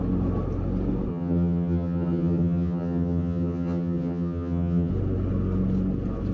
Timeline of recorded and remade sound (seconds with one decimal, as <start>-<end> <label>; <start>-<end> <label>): 0.0-1.1 recorded; 1.1-4.9 remade; 4.9-6.3 recorded